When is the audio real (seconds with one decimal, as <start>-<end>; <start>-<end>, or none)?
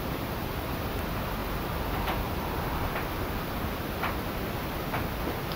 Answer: 0.0-5.6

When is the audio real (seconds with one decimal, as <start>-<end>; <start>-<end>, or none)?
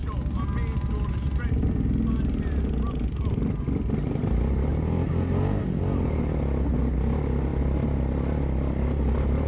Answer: 0.0-9.5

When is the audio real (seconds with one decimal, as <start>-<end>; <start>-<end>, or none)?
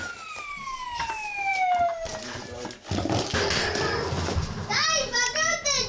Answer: 0.0-5.9